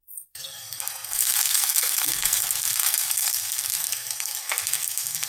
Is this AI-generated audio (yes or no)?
yes